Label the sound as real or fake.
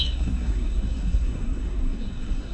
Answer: fake